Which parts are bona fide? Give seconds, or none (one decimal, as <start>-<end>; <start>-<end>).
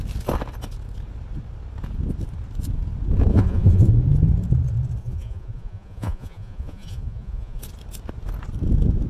0.0-3.3; 3.9-5.0; 7.6-9.1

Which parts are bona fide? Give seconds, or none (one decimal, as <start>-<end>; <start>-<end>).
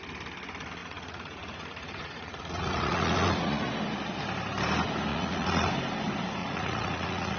0.0-0.8; 3.7-5.1; 5.7-6.4